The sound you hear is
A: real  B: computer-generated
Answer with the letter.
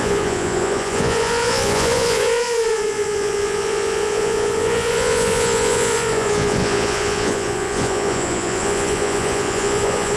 B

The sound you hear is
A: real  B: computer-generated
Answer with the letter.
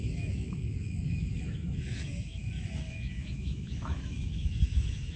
B